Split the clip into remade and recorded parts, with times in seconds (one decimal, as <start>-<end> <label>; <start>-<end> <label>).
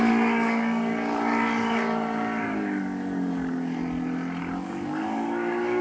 0.0-3.8 remade; 3.8-4.4 recorded; 4.4-5.8 remade